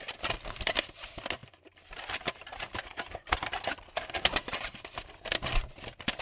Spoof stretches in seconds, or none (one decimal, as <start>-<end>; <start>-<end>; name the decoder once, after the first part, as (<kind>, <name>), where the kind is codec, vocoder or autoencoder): 1.4-5.1 (vocoder, BigVGAN v2)